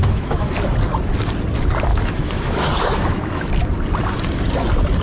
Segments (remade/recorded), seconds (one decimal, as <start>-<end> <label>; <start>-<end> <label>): 0.0-0.5 remade; 0.5-1.9 recorded; 1.9-3.5 remade; 3.5-5.0 recorded